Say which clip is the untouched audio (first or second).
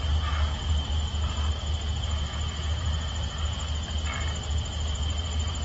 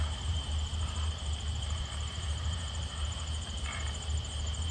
first